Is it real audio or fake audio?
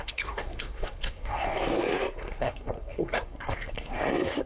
fake